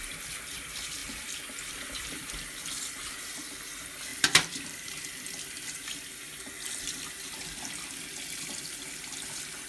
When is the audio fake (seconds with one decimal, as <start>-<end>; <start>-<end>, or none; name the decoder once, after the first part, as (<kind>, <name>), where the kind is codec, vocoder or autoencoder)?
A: 0.0-9.7 (vocoder, BigVGAN v2)